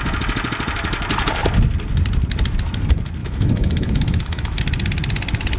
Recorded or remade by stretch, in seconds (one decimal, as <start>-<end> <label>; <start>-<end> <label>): 0.0-3.2 recorded; 3.2-4.6 remade; 4.6-5.6 recorded